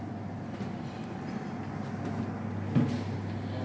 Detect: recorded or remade recorded